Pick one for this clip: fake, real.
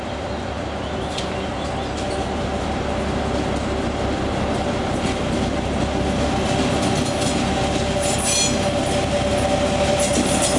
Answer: real